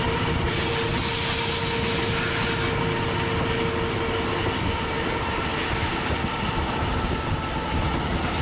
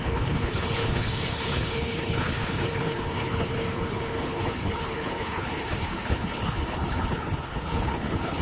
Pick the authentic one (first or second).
first